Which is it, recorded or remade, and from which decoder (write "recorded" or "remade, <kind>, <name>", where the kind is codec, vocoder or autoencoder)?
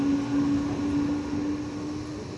recorded